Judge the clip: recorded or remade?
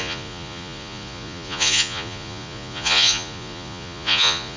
remade